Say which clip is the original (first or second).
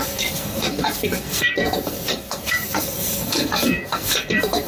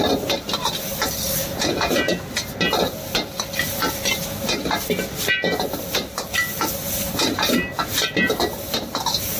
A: second